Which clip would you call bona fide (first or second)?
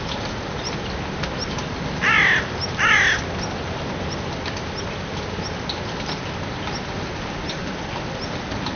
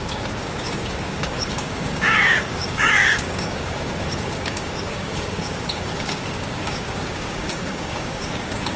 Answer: first